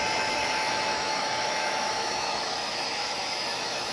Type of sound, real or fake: fake